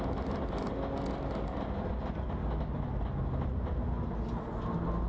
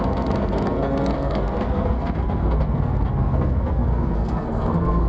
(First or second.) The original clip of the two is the first